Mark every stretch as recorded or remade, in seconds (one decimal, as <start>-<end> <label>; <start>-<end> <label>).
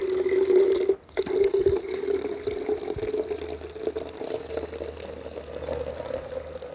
0.0-6.7 recorded